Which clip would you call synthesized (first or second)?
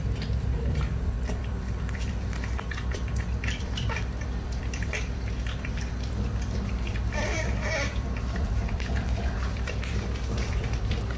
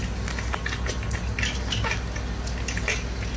first